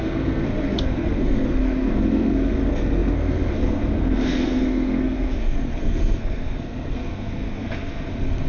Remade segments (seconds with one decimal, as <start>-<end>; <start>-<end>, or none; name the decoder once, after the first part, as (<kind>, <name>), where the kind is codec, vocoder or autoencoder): 0.0-8.5 (codec, SNAC)